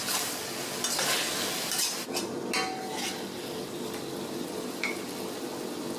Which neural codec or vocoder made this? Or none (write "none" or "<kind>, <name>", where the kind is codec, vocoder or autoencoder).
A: none